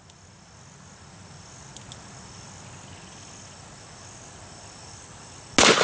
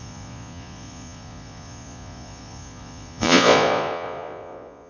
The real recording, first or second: first